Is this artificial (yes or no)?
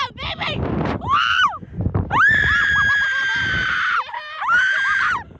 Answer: yes